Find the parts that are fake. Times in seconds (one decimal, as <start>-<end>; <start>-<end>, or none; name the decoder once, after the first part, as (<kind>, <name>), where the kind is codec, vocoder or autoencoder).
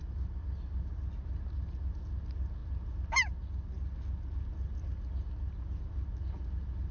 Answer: none